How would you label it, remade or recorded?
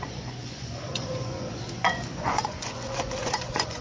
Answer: remade